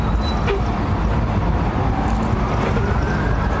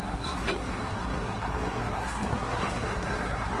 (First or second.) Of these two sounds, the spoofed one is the second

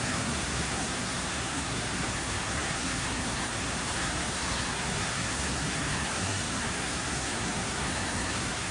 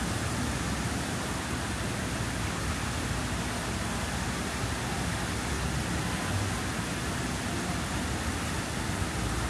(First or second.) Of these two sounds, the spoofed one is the first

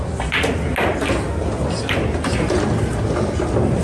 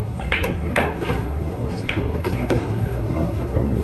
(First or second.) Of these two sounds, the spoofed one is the second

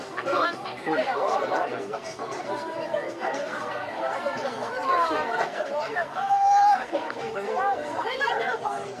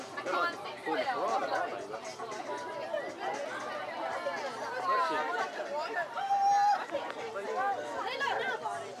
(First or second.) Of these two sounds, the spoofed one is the first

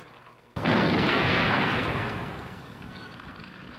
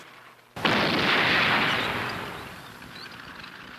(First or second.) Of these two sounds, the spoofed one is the first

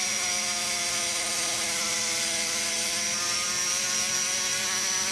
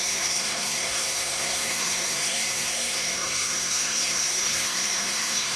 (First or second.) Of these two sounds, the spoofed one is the second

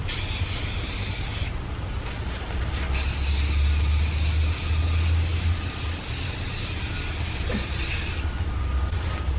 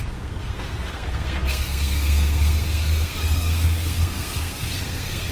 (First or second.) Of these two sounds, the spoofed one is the second